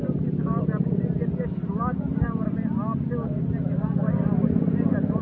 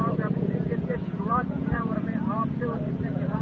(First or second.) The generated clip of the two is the second